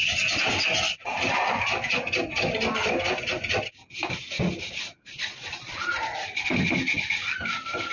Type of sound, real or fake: real